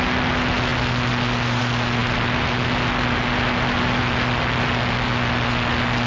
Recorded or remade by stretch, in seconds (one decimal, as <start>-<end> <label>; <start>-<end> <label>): 0.0-6.1 recorded